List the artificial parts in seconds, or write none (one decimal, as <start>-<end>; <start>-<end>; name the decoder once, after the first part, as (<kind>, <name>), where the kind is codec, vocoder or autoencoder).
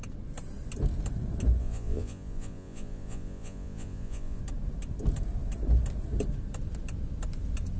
1.6-4.4 (vocoder, Vocos)